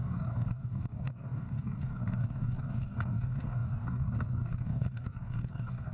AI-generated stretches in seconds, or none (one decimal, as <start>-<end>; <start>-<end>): 0.0-5.9